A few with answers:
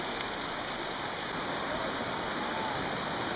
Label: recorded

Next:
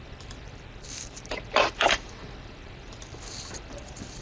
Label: remade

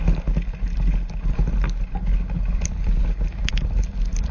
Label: recorded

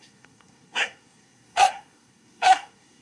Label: remade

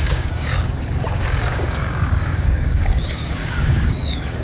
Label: remade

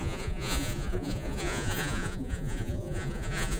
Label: remade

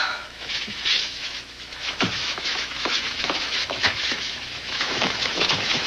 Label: remade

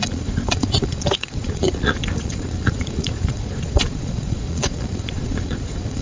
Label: remade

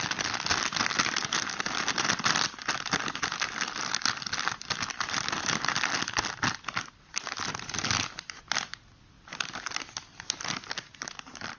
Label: recorded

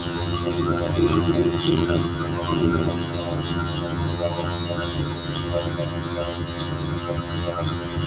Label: remade